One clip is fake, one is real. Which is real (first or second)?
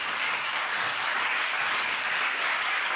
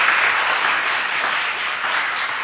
second